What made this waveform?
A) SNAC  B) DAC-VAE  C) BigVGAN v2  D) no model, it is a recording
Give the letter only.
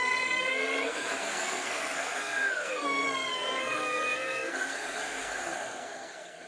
A